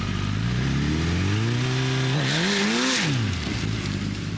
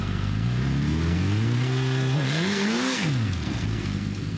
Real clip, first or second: first